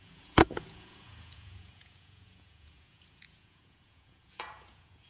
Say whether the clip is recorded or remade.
remade